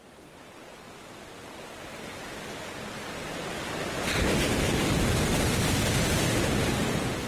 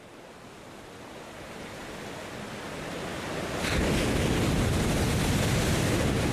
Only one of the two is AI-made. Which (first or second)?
first